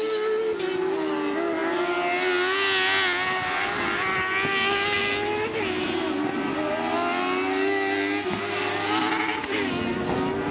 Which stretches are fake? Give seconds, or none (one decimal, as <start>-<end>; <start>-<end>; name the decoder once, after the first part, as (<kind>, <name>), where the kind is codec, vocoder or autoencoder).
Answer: none